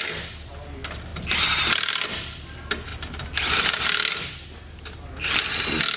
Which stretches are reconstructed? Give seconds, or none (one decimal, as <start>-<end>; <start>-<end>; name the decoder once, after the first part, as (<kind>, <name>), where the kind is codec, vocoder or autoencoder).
none